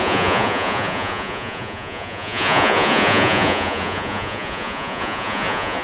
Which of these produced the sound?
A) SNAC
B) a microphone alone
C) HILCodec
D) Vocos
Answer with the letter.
D